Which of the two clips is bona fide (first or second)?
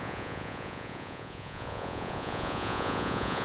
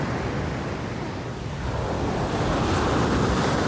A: second